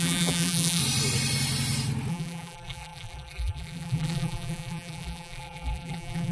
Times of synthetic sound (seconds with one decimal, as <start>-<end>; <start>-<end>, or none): 0.0-0.8; 2.1-6.3